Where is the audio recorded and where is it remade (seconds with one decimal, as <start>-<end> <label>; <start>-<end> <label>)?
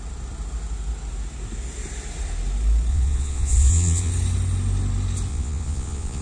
0.0-2.9 recorded; 2.9-4.1 remade; 4.1-5.3 recorded; 5.3-6.2 remade